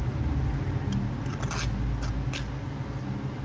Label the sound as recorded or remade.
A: recorded